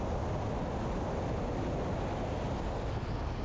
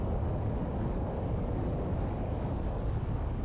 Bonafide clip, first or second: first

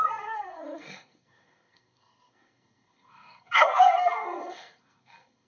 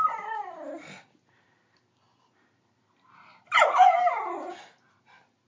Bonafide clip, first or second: second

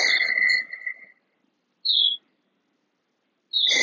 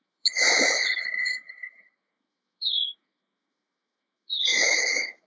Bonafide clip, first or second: first